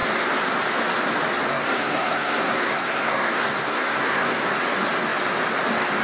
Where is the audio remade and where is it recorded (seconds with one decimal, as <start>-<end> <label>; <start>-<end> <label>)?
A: 0.0-1.5 recorded; 1.5-4.4 remade; 4.4-6.0 recorded